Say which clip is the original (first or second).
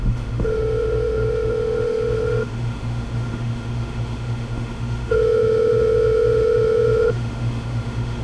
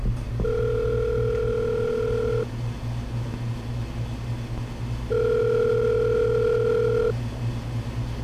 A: second